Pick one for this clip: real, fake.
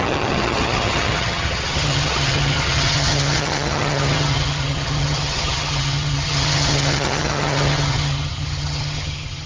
fake